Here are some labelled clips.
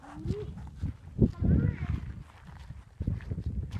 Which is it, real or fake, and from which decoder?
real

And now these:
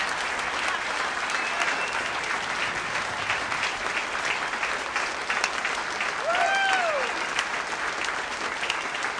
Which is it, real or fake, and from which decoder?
real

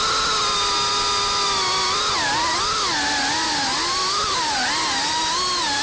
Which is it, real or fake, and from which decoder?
real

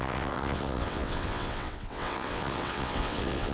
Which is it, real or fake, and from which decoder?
fake, vocoder, WaveNeXt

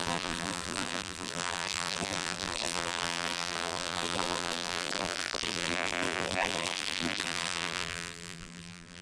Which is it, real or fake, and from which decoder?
fake, vocoder, BigVGAN v2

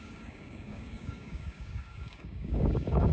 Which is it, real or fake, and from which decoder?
fake, codec, DAC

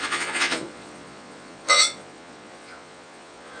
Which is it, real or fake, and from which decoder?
fake, vocoder, Vocos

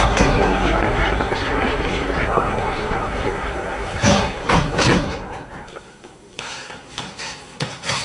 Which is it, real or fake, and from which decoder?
fake, codec, SNAC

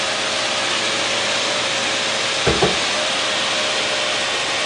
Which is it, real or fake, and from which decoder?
real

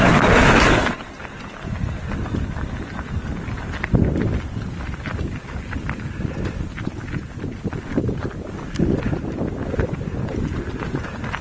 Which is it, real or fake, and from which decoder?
real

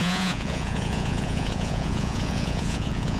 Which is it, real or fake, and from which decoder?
fake, vocoder, Vocos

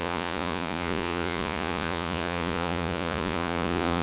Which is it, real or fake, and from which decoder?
fake, vocoder, Vocos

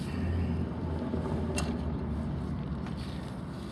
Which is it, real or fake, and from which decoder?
real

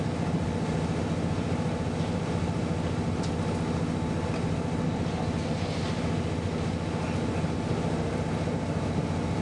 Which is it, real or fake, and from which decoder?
real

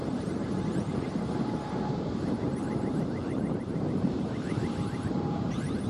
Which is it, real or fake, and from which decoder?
fake, vocoder, BigVGAN v2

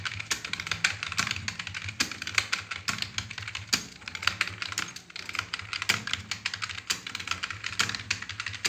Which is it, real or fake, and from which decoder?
real